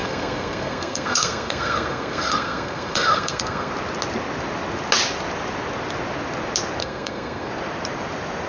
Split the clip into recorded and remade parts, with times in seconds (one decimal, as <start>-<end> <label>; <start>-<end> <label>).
0.0-3.7 remade; 3.7-6.8 recorded; 6.8-7.5 remade; 7.5-8.5 recorded